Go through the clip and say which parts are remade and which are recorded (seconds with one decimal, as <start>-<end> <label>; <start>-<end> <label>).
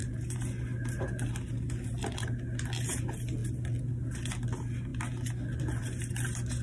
0.0-6.6 recorded